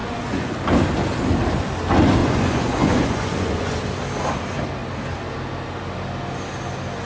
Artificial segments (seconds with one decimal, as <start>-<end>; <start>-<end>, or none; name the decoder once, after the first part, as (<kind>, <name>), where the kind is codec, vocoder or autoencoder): 0.0-0.5 (vocoder, Vocos); 2.2-3.8